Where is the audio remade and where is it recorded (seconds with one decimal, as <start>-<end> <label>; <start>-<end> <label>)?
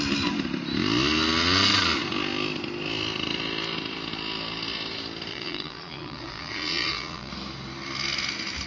0.0-5.3 recorded; 5.3-7.3 remade; 7.3-8.7 recorded